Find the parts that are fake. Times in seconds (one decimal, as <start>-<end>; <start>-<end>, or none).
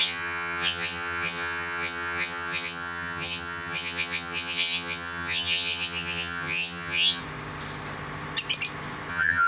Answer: 0.0-7.2; 9.1-9.5